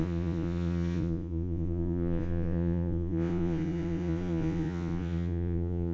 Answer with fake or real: fake